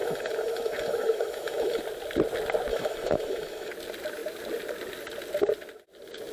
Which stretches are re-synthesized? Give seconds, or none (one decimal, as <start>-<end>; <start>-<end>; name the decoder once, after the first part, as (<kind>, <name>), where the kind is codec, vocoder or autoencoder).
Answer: 0.0-1.8 (autoencoder, DAC-VAE); 2.7-3.7